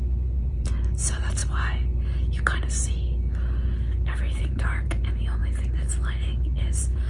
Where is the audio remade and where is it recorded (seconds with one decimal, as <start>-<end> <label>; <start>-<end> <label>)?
0.0-1.4 remade; 1.4-4.4 recorded; 4.4-5.4 remade; 5.4-6.6 recorded; 6.6-7.1 remade